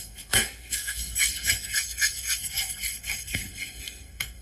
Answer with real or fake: fake